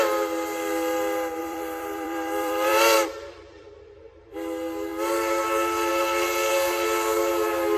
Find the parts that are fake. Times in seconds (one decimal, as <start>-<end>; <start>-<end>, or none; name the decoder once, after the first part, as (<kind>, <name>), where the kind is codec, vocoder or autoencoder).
1.4-3.7 (vocoder, BigVGAN v2)